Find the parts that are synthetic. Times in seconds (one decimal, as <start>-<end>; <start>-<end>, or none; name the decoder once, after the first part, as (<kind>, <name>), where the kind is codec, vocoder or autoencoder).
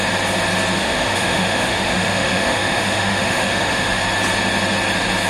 0.8-4.0 (autoencoder, DAC-VAE)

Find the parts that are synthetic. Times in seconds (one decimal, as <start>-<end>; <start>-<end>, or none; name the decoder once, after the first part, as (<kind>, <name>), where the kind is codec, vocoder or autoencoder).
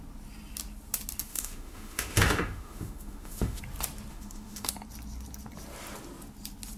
1.3-3.6 (autoencoder, DAC-VAE); 4.1-4.7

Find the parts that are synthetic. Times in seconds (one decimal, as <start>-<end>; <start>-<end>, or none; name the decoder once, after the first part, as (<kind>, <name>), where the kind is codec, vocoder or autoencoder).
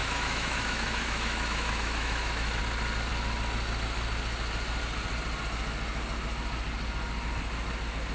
0.0-2.6 (autoencoder, DAC-VAE)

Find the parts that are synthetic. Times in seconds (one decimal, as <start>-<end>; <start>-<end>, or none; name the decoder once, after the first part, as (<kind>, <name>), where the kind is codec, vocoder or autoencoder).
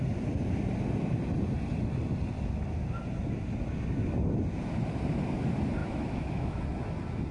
5.8-6.6 (autoencoder, DAC-VAE)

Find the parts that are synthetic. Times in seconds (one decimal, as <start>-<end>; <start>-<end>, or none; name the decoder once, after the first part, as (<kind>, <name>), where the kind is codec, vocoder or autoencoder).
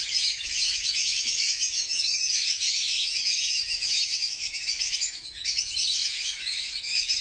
0.0-7.2 (autoencoder, DAC-VAE)